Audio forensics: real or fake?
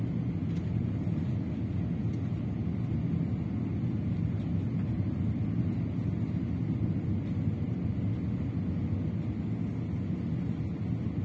real